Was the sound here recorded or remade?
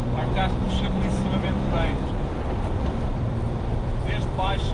remade